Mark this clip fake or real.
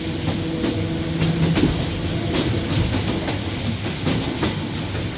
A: real